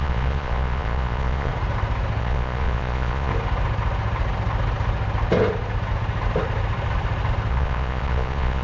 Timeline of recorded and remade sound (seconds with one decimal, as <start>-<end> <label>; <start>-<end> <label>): 0.0-1.5 remade; 1.5-2.2 recorded; 2.2-3.3 remade; 3.3-7.5 recorded; 7.5-8.6 remade